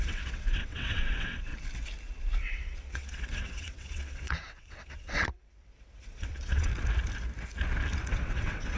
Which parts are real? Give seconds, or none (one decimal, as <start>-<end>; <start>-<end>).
1.5-2.4; 6.7-8.1